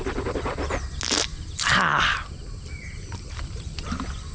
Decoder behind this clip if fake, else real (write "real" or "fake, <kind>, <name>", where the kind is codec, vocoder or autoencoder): real